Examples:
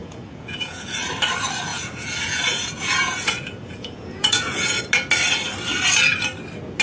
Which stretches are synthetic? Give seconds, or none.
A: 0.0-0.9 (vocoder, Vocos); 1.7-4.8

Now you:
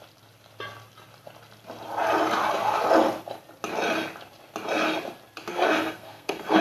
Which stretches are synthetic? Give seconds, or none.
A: 5.5-6.6 (codec, SNAC)